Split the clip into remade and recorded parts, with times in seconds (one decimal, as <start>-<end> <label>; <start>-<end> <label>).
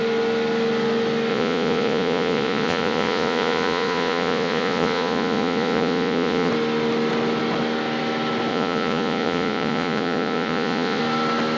0.0-1.3 recorded; 1.3-6.5 remade; 6.5-8.5 recorded; 8.5-11.0 remade; 11.0-11.6 recorded